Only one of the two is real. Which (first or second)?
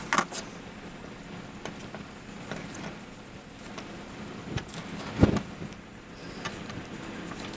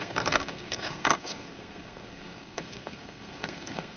first